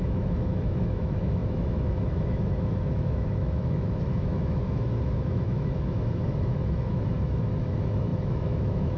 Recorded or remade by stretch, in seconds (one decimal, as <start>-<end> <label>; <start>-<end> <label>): 0.0-9.0 remade